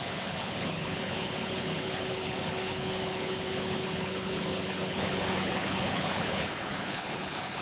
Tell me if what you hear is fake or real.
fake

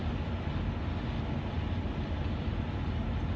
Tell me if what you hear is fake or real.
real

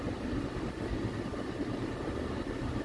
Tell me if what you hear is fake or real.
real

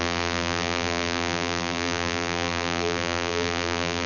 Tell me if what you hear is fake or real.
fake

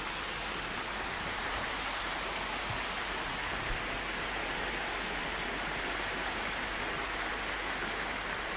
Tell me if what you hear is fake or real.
real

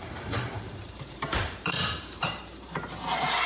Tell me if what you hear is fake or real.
fake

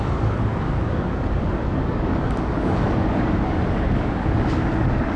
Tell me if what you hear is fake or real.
fake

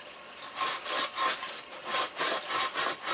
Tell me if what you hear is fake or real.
real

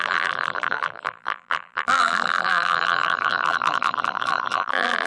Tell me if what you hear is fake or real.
fake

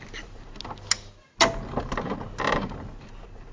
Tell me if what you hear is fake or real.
real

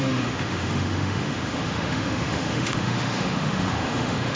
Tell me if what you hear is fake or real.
fake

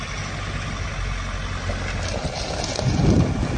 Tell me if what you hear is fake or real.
real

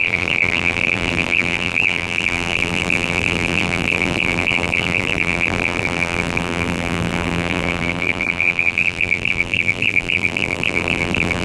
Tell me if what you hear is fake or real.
fake